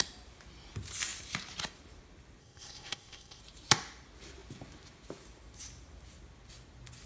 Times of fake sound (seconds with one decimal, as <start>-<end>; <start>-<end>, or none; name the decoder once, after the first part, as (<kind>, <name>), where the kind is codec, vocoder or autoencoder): 2.4-3.4 (codec, ZipCodec)